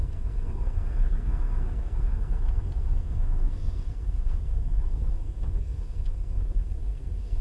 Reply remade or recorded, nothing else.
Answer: remade